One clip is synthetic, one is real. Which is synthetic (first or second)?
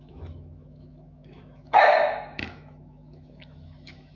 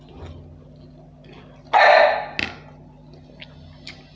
first